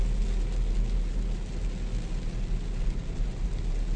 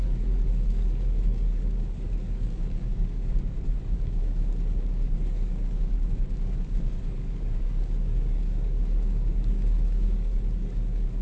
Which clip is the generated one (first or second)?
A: second